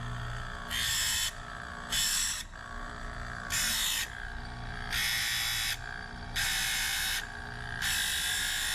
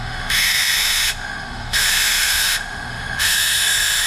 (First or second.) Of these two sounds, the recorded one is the first